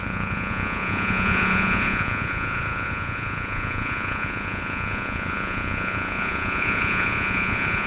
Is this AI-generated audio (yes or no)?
yes